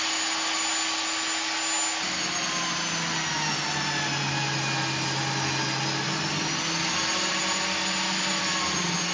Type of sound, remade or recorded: recorded